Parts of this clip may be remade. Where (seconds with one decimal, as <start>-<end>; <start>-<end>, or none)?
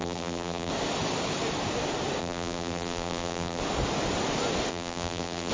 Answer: 0.0-0.7; 2.2-3.6; 4.7-5.5